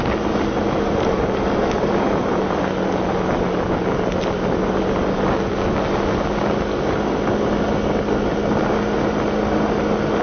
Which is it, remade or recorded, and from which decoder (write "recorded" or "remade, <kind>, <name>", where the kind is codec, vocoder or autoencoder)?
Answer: recorded